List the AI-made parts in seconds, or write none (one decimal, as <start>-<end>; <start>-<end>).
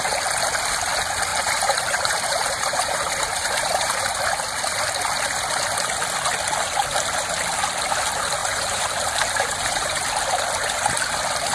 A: 1.3-4.4; 8.4-10.1